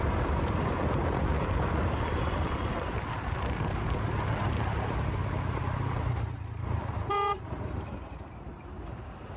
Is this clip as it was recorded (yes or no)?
no